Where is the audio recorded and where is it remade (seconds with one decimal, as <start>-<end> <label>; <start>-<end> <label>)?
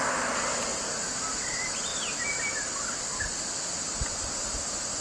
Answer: 0.0-1.9 recorded; 1.9-2.4 remade; 2.4-5.0 recorded